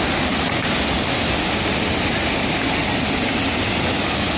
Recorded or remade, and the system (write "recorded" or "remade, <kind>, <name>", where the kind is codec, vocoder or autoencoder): recorded